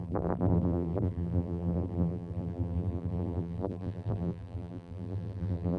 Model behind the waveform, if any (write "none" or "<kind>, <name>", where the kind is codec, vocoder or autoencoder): vocoder, BigVGAN v2